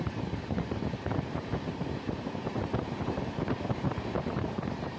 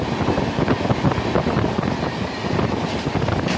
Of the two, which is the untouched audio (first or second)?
second